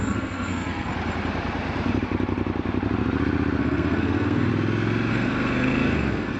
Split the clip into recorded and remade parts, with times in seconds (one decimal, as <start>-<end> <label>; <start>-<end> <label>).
0.0-0.9 remade; 0.9-3.6 recorded; 3.6-4.5 remade; 4.5-5.1 recorded; 5.1-6.4 remade